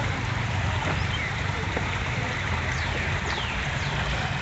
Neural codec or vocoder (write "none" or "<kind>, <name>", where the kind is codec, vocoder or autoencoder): vocoder, BigVGAN v2